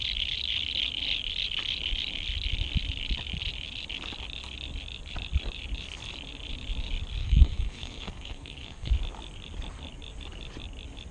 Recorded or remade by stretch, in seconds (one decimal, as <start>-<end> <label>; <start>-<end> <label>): 0.0-7.2 recorded; 7.2-8.9 remade; 8.9-11.1 recorded